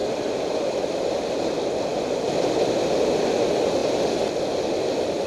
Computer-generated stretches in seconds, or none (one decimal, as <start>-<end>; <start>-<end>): 0.0-0.9; 3.8-4.4